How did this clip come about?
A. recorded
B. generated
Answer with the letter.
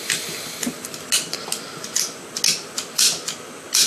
A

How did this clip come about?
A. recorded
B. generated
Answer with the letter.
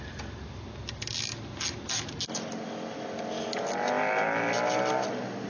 A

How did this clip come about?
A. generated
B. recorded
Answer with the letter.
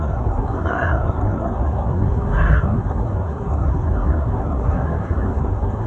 A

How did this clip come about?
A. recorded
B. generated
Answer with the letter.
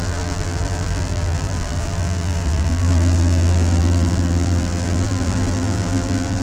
B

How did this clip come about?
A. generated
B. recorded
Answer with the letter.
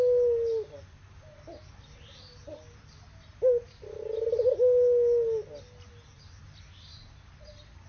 B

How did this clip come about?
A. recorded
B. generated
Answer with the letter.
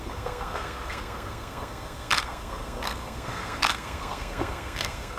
B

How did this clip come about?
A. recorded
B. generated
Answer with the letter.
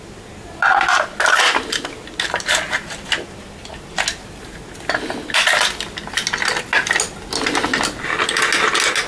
A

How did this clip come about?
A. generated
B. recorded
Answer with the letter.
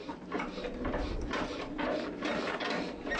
B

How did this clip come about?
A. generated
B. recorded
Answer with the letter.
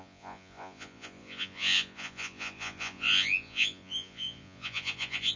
A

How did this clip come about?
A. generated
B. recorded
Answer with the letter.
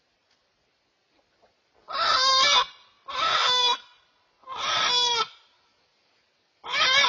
B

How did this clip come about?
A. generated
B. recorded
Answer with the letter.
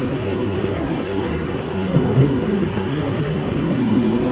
A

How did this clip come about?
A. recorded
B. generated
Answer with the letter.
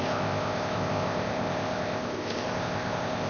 B